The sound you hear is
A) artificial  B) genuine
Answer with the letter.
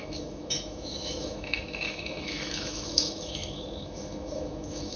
A